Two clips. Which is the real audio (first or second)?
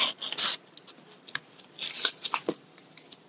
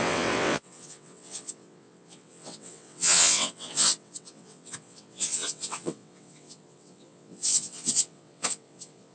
first